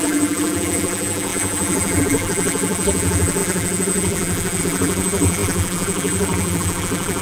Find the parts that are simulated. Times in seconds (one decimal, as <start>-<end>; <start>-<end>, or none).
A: 0.0-7.2